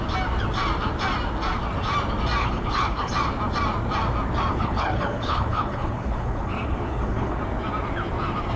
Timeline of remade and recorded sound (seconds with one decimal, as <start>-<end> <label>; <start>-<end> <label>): 0.0-2.4 recorded; 2.4-3.1 remade; 3.1-4.5 recorded; 4.5-7.4 remade; 7.4-8.6 recorded